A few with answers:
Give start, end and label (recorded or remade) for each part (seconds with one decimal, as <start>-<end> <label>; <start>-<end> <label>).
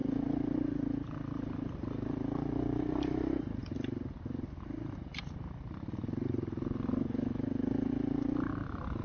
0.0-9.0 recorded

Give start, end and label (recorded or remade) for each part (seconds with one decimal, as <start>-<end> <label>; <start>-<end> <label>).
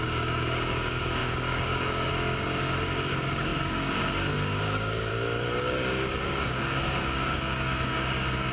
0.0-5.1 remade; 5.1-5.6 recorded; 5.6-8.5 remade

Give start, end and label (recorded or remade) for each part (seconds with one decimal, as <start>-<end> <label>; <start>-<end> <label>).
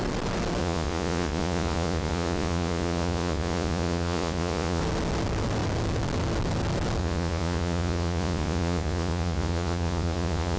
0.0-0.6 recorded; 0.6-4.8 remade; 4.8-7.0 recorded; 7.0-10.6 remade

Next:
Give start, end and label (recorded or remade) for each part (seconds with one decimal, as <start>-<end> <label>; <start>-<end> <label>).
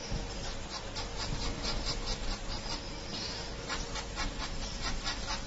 0.0-5.5 recorded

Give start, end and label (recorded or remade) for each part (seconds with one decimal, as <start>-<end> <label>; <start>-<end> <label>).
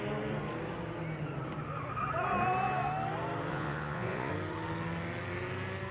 0.0-3.5 recorded; 3.5-4.3 remade; 4.3-5.9 recorded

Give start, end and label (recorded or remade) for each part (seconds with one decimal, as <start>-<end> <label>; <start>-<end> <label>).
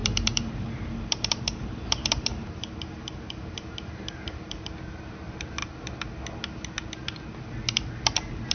0.0-4.7 remade; 4.7-8.5 recorded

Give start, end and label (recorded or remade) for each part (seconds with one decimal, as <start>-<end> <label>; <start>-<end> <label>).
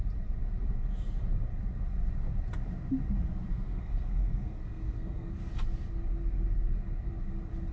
0.0-3.5 recorded; 3.5-5.3 remade; 5.3-7.7 recorded